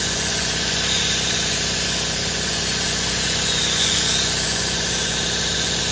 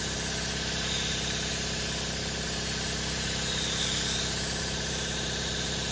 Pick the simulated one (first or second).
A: first